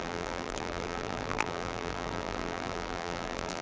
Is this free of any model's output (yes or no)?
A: no